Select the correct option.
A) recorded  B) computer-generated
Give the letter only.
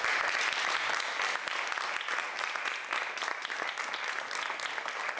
A